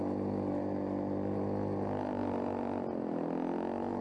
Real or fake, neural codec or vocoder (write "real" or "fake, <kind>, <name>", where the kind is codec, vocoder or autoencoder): real